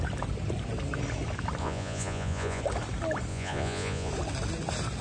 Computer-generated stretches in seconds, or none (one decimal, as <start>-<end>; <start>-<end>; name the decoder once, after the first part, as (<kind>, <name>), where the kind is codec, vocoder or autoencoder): 1.6-2.6 (vocoder, Vocos); 3.3-4.1